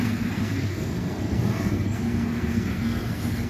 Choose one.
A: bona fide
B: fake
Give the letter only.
B